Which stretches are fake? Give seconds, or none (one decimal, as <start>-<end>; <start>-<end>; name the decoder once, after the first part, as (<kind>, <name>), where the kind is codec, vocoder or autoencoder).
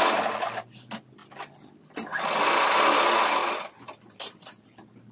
none